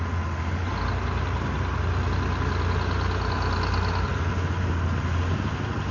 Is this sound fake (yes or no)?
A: no